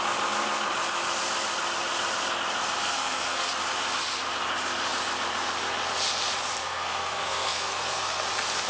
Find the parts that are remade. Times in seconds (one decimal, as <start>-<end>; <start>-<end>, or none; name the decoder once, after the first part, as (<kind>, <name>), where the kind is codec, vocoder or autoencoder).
2.8-3.5 (codec, SNAC); 6.6-8.2